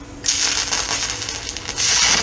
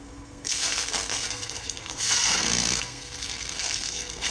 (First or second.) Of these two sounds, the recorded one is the first